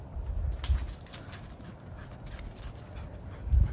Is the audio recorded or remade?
recorded